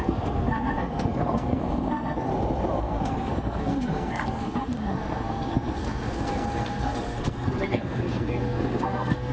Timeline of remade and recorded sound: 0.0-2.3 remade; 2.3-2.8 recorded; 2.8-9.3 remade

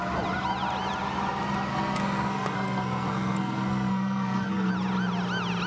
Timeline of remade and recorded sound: 0.0-1.7 recorded; 1.7-4.7 remade; 4.7-5.7 recorded